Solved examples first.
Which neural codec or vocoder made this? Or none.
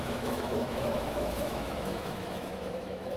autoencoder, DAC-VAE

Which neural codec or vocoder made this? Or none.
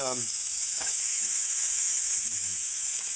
autoencoder, DAC-VAE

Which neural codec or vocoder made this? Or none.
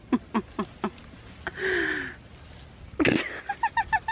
none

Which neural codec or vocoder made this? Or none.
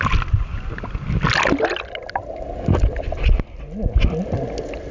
none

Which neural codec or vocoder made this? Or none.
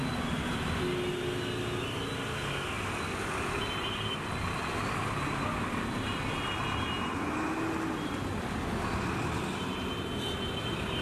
none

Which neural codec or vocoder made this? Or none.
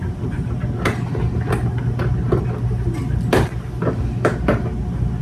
none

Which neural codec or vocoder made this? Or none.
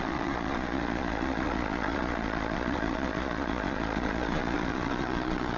vocoder, Vocos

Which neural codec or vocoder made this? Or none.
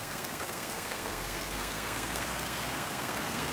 codec, SNAC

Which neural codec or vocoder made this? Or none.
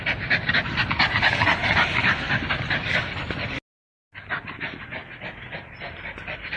none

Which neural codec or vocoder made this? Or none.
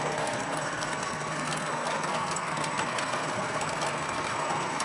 codec, SNAC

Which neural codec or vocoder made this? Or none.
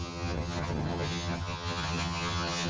vocoder, HiFi-GAN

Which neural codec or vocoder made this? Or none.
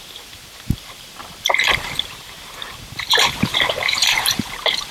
vocoder, BigVGAN v2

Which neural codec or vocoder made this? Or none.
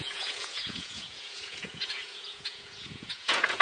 vocoder, Vocos